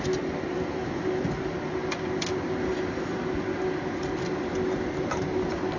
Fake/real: real